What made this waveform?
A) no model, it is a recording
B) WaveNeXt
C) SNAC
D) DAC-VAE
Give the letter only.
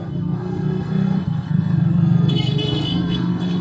C